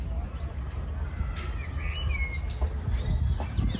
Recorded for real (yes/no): yes